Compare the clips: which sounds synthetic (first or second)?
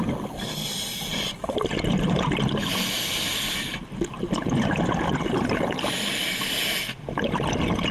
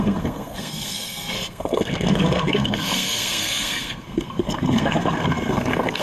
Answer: second